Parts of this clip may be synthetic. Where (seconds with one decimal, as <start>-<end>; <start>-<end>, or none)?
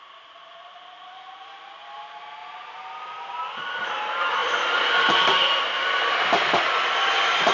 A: none